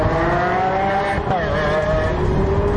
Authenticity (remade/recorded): recorded